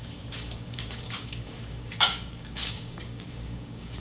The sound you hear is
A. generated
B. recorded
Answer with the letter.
A